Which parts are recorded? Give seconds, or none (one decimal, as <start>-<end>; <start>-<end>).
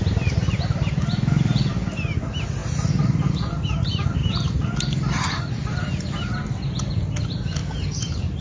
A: 0.0-3.9; 4.6-8.4